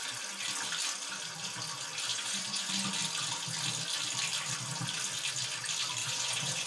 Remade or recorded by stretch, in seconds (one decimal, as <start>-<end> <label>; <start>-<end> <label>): 0.0-2.1 recorded; 2.1-2.7 remade; 2.7-6.0 recorded; 6.0-6.7 remade